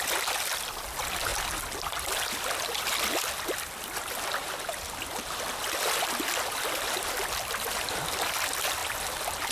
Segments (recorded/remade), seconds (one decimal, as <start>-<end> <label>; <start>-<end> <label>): 0.0-9.5 recorded